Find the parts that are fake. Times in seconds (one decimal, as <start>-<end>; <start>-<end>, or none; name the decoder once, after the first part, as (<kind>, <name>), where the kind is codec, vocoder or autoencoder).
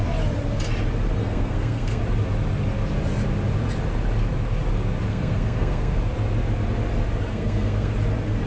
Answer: 1.2-2.0 (codec, SNAC); 5.1-6.0; 7.3-7.9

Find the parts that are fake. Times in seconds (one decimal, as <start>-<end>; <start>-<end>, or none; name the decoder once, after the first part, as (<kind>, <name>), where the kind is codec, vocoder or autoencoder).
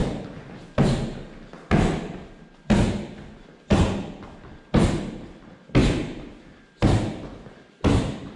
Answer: 5.8-8.4 (vocoder, BigVGAN v2)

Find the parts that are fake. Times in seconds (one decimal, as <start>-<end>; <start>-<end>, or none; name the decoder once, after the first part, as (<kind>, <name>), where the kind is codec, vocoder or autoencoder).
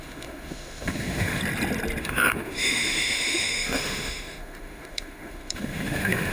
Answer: 0.0-1.4 (autoencoder, DAC-VAE); 2.0-6.3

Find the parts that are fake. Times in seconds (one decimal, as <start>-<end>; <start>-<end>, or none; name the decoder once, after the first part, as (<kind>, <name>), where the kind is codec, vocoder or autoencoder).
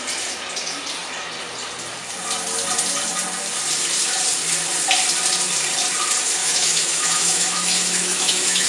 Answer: 6.4-8.7 (autoencoder, DAC-VAE)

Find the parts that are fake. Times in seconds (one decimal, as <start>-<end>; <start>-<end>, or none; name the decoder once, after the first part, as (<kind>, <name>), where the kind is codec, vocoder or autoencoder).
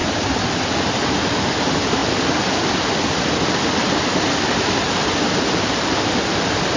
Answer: none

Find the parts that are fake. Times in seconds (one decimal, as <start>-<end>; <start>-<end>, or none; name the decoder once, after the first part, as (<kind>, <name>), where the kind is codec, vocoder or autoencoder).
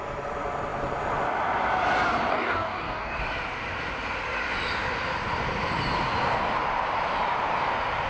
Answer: 2.3-3.2 (codec, DAC)